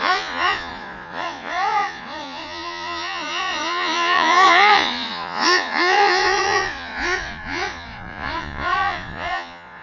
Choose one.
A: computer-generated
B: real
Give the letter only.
A